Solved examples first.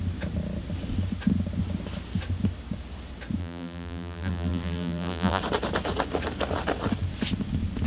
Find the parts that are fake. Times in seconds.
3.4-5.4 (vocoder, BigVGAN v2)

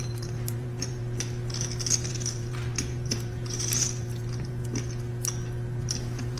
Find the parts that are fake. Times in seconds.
0.0-1.0 (vocoder, BigVGAN v2); 2.1-4.6; 5.9-6.4

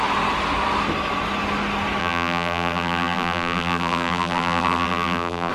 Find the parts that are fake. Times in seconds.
2.0-5.5 (vocoder, BigVGAN v2)

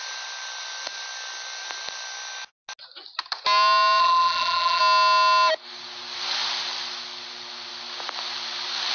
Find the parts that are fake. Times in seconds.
4.0-4.8 (vocoder, BigVGAN v2)

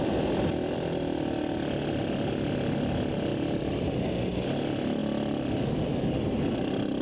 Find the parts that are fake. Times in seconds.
none

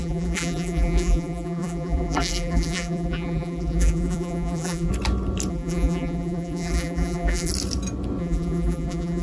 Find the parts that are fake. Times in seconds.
0.0-4.9 (vocoder, BigVGAN v2); 5.5-7.5; 8.2-9.2

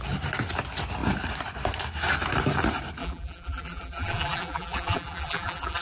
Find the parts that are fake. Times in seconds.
3.0-5.8 (vocoder, BigVGAN v2)

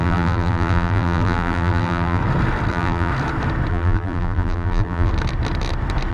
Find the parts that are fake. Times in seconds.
0.0-2.2 (vocoder, BigVGAN v2); 2.7-3.1; 3.7-5.1